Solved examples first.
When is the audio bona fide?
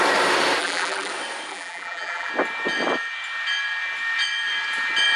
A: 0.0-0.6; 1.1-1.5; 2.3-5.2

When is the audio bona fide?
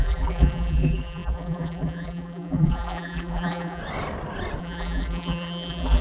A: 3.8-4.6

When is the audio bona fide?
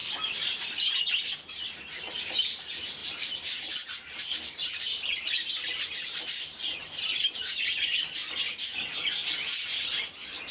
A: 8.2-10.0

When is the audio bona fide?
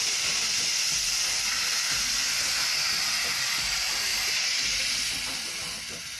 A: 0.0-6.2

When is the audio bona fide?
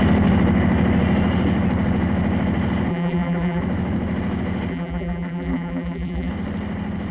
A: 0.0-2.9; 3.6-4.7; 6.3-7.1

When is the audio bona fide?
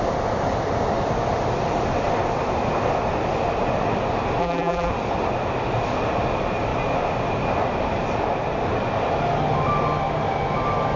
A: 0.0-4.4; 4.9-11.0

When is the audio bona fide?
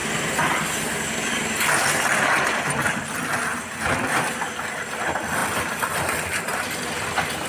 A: 0.0-5.4; 6.9-7.5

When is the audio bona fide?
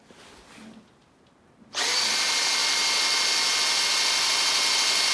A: 0.0-5.1